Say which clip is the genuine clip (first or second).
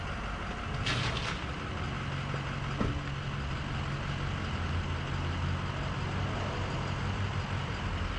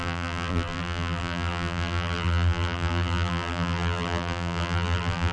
first